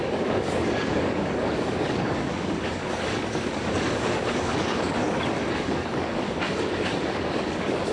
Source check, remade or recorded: remade